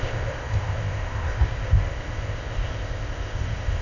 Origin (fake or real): fake